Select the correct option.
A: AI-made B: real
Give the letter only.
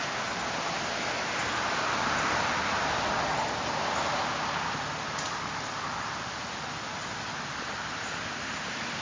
B